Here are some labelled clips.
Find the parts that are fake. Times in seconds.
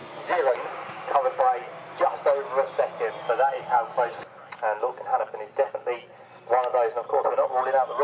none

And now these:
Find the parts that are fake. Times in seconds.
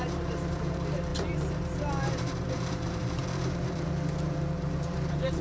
0.0-5.4 (vocoder, BigVGAN v2)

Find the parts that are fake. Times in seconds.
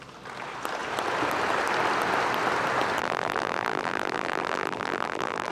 3.0-5.5 (vocoder, BigVGAN v2)